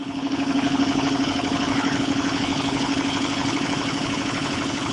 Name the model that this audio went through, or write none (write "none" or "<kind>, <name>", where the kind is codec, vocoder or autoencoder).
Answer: codec, HILCodec